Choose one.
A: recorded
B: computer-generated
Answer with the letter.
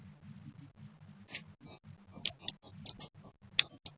A